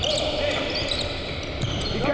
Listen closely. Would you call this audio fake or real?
real